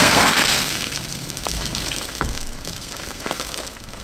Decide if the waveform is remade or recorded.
remade